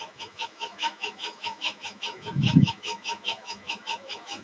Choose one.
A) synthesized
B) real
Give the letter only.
A